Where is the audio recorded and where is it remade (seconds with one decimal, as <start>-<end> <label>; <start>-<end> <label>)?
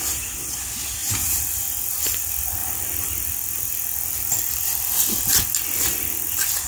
0.0-6.7 recorded